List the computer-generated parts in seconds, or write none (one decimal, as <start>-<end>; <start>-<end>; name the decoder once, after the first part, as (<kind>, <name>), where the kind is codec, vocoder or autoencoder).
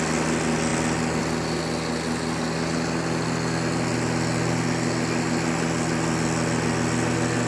none